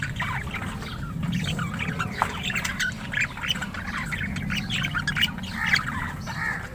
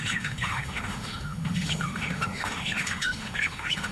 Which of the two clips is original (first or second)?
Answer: first